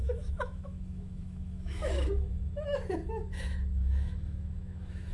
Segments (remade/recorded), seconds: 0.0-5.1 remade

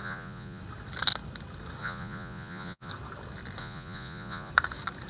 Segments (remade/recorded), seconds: 0.0-0.6 remade; 0.6-1.8 recorded; 1.8-2.9 remade; 2.9-3.6 recorded; 3.6-4.5 remade; 4.5-5.1 recorded

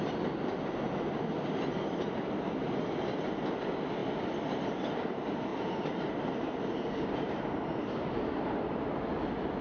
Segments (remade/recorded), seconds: 0.0-9.6 recorded

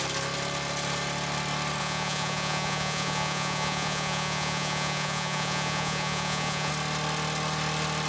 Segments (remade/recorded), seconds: 0.0-1.8 recorded; 1.8-6.7 remade; 6.7-8.1 recorded

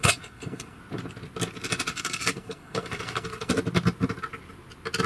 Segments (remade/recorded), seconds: 0.0-0.8 remade; 0.8-1.9 recorded; 1.9-3.5 remade; 3.5-5.1 recorded

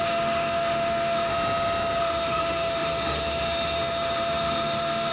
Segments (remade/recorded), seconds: 0.0-1.3 remade; 1.3-2.0 recorded; 2.0-5.1 remade

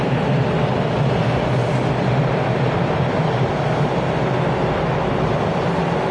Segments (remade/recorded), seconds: 0.0-6.1 recorded